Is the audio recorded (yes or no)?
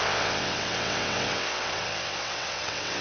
no